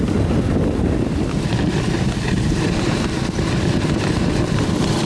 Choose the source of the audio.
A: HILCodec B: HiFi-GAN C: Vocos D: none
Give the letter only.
D